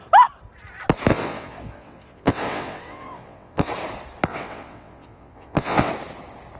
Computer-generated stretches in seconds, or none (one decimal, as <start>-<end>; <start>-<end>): 1.1-3.7; 4.3-5.9